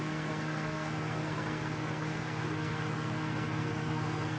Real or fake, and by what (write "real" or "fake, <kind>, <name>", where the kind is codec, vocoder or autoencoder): fake, codec, SNAC